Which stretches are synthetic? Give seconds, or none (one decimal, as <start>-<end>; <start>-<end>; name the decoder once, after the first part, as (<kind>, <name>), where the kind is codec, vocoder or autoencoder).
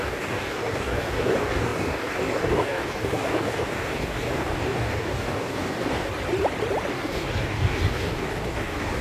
0.0-6.1 (codec, DAC); 6.9-9.0